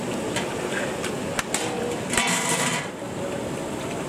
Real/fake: real